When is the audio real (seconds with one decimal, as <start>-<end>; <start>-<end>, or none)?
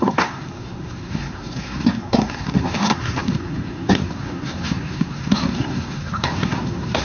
none